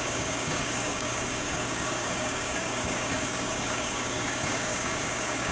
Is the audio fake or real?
fake